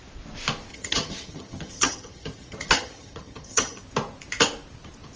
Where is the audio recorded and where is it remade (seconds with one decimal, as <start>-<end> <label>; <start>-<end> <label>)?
0.0-0.7 recorded; 0.7-3.8 remade; 3.8-5.2 recorded